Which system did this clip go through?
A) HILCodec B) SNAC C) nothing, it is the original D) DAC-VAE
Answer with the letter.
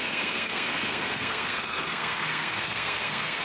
B